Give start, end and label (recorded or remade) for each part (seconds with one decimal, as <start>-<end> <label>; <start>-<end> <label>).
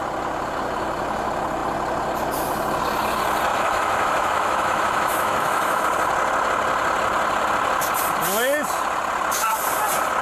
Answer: 0.0-3.5 recorded; 3.5-5.8 remade; 5.8-10.2 recorded